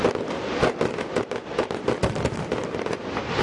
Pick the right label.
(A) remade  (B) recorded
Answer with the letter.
B